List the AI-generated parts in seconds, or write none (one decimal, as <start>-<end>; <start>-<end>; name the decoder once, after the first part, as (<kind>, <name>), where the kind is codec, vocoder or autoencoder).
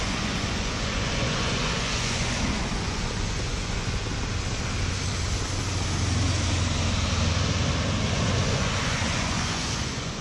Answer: 0.0-4.1 (vocoder, Vocos); 8.1-10.2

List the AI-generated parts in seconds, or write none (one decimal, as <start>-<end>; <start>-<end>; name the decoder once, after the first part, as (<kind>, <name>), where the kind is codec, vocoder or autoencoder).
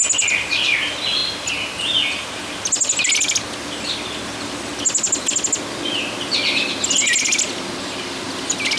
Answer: none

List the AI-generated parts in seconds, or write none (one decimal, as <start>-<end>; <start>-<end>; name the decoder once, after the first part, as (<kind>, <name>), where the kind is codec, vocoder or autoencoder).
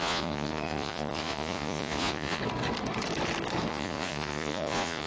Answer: 0.0-2.4 (vocoder, Vocos); 3.7-5.1